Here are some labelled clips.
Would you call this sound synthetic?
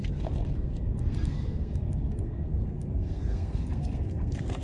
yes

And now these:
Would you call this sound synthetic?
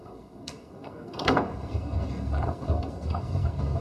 yes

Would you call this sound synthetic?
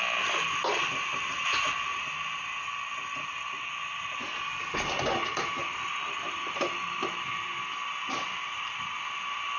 no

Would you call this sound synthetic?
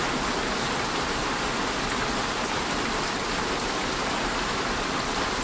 no